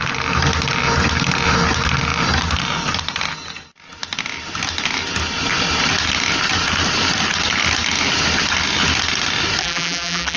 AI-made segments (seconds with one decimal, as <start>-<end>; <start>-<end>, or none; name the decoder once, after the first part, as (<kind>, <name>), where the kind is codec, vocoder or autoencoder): 9.6-10.4 (vocoder, BigVGAN v2)